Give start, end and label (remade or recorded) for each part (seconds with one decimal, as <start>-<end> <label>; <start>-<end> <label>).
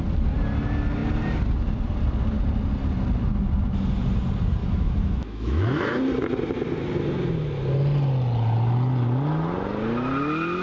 0.0-4.6 recorded; 4.6-6.0 remade; 6.0-10.6 recorded